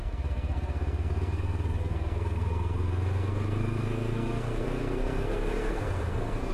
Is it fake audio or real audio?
fake